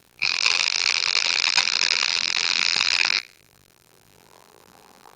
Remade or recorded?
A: remade